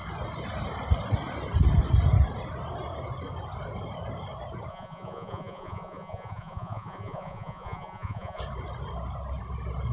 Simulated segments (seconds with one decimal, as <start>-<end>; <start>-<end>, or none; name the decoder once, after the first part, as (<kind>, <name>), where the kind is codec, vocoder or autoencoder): 4.7-8.4 (vocoder, Vocos)